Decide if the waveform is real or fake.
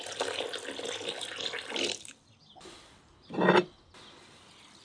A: real